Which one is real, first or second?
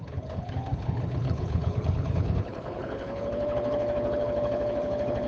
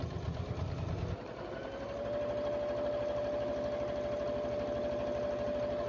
second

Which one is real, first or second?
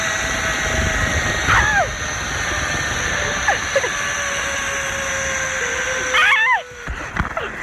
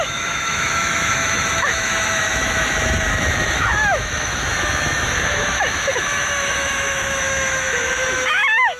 first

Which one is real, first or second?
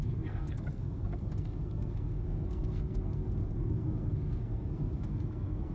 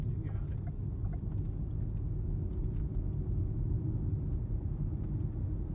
second